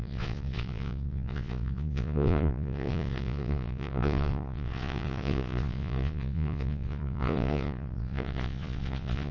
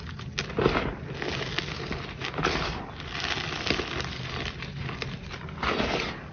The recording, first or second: second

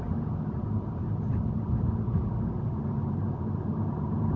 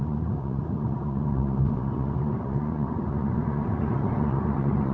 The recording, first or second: first